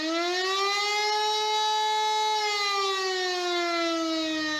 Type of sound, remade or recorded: recorded